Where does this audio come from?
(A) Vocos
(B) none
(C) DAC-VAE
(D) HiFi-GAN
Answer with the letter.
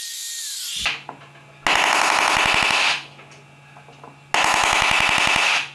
B